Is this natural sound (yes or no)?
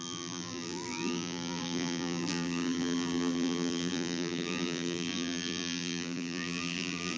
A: no